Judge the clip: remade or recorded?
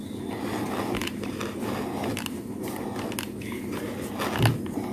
recorded